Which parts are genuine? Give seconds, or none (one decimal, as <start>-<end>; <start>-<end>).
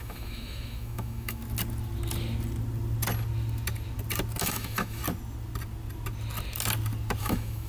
1.4-4.4; 5.0-7.2